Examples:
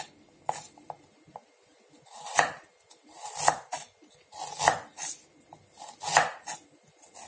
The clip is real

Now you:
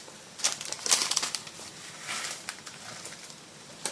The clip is real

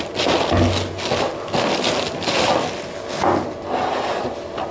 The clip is real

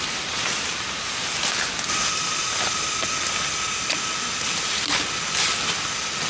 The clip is real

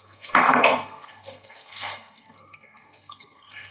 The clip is fake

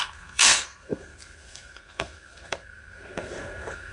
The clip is fake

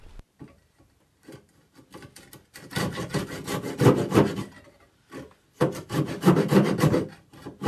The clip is real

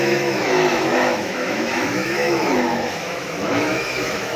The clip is fake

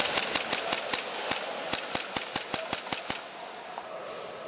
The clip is real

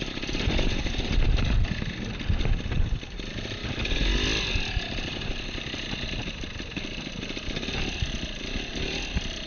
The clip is real